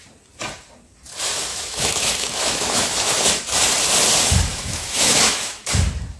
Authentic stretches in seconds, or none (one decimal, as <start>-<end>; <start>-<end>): 0.0-1.5; 3.2-4.5; 5.7-6.2